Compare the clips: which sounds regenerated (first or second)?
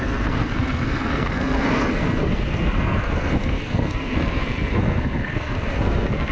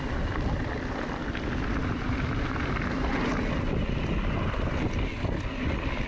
first